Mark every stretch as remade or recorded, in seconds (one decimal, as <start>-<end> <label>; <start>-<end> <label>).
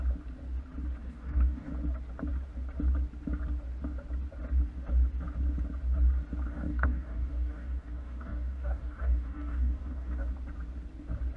0.0-1.0 recorded; 1.0-1.7 remade; 1.7-6.5 recorded; 6.5-10.3 remade; 10.3-11.4 recorded